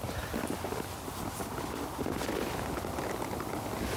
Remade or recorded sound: remade